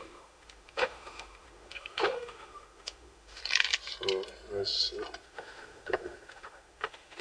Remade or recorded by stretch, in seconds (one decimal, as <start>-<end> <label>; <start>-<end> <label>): 0.0-3.4 remade; 3.4-5.2 recorded; 5.2-7.2 remade